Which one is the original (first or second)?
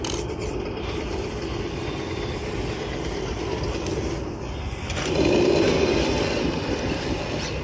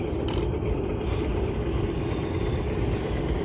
first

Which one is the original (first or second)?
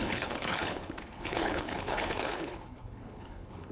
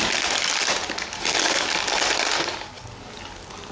second